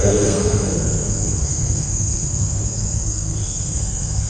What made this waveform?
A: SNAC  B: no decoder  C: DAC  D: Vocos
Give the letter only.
A